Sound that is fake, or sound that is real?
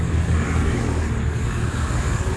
fake